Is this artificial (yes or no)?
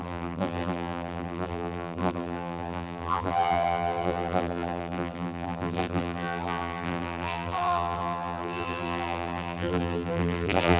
yes